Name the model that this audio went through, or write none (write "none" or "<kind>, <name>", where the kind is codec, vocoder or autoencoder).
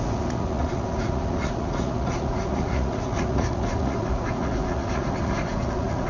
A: vocoder, Vocos